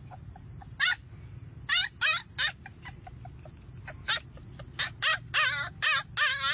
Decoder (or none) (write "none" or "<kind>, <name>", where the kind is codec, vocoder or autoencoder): none